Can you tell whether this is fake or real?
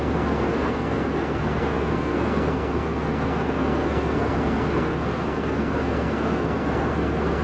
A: fake